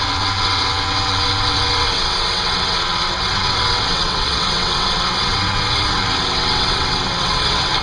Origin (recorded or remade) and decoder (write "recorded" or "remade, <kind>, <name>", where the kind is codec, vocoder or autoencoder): remade, vocoder, WaveNeXt